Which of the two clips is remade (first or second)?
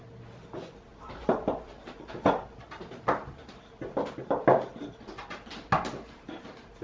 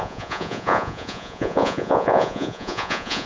second